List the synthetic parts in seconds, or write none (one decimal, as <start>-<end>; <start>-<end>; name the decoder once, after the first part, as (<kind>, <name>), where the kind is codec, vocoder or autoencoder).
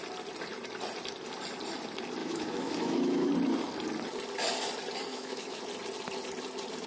2.2-3.3 (autoencoder, DAC-VAE); 5.1-5.6